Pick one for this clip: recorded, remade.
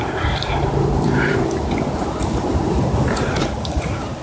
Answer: remade